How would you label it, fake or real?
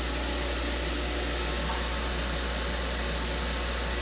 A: real